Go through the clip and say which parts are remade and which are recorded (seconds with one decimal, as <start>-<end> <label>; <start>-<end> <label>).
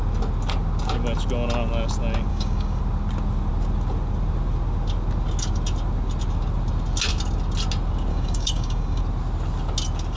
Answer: 0.0-2.3 recorded; 2.3-2.8 remade; 2.8-8.1 recorded; 8.1-9.0 remade; 9.0-10.2 recorded